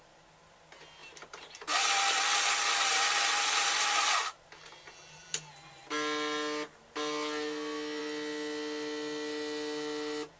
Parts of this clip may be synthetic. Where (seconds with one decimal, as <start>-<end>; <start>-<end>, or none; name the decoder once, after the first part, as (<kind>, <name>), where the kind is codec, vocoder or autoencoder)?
none